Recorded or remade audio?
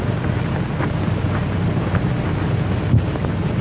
recorded